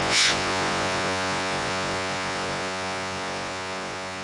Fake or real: fake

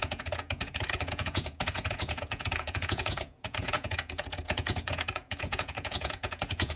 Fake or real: fake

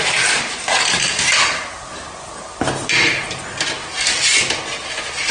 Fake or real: real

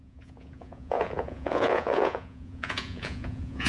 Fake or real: fake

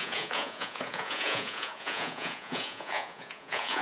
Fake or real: fake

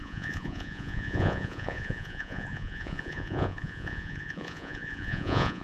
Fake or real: fake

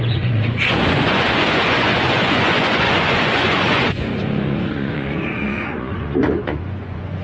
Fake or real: fake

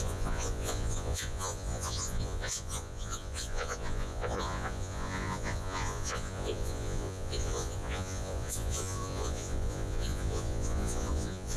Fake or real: fake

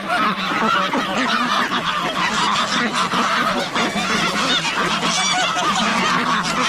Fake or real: real